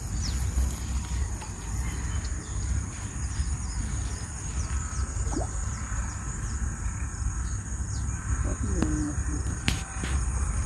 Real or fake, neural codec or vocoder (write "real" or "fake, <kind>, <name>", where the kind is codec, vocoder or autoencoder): real